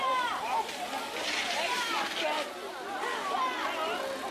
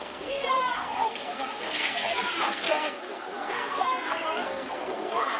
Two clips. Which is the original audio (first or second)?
first